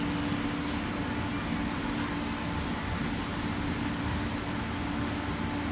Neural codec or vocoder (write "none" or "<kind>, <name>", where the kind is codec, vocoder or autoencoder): none